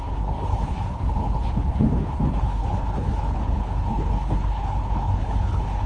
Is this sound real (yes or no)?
no